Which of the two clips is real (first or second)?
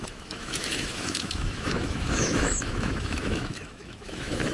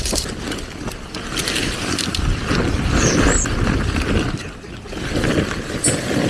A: second